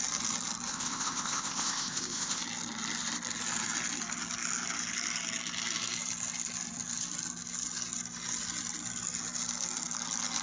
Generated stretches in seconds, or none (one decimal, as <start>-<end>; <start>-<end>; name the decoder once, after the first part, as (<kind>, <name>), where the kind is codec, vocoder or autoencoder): 0.7-2.4 (codec, ZipCodec)